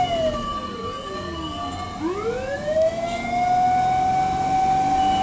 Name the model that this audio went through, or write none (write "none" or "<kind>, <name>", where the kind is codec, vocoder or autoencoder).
none